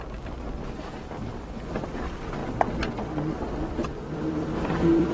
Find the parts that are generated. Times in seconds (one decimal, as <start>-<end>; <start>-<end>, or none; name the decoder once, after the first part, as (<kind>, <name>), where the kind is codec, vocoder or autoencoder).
0.0-2.4 (vocoder, BigVGAN v2); 3.4-5.1